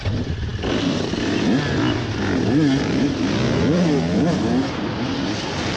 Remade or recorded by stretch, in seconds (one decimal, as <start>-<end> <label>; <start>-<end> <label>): 0.0-5.8 recorded